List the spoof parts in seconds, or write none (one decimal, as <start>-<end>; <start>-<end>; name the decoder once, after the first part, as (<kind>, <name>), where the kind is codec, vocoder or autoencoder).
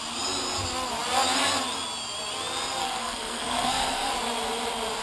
2.8-4.1 (codec, SNAC)